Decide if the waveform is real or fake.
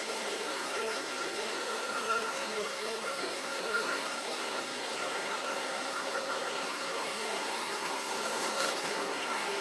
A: fake